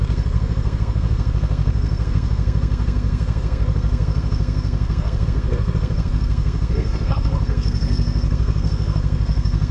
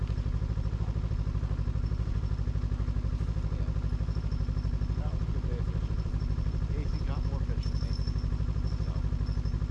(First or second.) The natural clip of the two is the second